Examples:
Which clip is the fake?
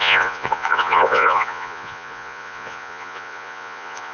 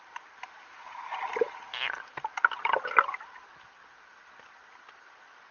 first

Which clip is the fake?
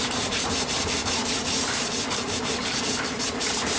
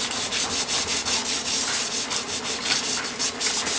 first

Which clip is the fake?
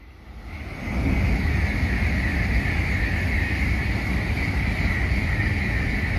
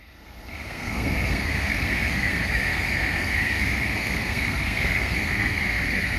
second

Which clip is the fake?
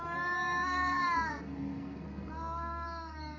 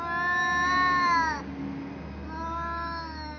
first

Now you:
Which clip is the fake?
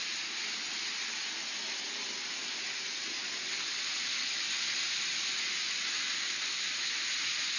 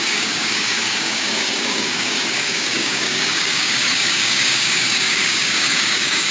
second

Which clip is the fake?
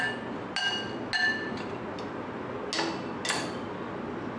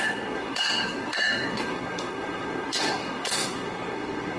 second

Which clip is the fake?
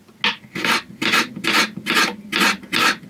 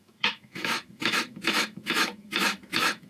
second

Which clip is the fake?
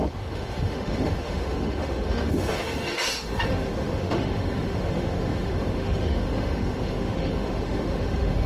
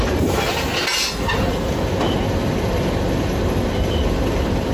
first